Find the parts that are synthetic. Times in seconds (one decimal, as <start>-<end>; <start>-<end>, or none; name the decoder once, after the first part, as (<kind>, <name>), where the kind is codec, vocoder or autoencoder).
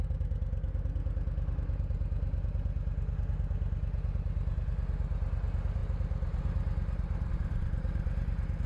none